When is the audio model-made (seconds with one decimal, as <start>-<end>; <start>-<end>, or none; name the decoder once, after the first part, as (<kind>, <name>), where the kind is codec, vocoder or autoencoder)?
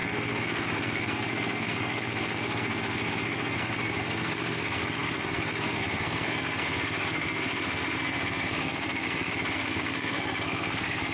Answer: 0.0-11.1 (codec, SNAC)